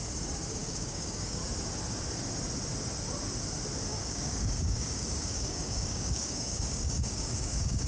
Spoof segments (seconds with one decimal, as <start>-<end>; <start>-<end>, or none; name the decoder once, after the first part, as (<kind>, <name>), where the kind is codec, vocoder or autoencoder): 0.6-1.4 (codec, DAC); 3.9-7.9